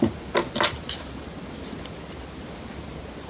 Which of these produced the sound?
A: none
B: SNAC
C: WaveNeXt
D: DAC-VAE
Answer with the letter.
A